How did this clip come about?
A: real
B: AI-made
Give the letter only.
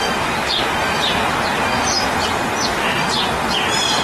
A